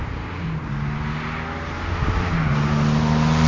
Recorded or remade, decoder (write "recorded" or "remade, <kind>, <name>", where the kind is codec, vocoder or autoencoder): recorded